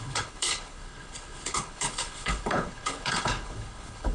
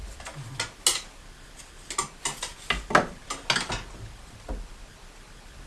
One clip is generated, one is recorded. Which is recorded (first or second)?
second